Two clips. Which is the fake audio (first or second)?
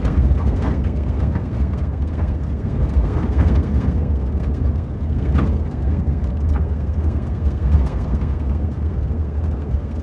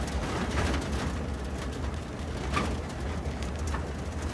first